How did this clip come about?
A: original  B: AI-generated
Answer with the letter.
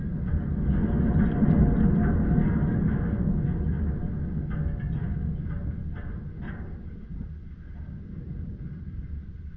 A